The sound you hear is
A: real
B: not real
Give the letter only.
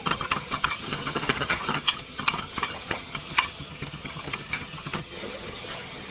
B